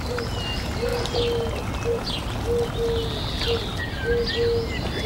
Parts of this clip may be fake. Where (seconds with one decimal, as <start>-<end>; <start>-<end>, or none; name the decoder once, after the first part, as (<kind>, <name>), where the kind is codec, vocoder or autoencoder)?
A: none